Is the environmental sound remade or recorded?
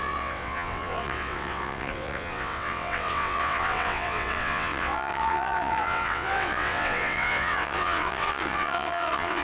remade